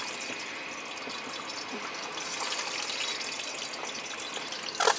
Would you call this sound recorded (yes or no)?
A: yes